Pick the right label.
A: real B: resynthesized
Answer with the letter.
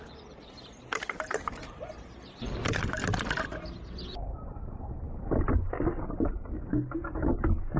A